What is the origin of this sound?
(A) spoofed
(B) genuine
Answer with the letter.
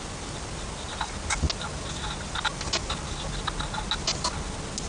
B